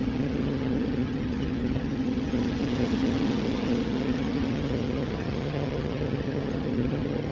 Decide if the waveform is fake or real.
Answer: fake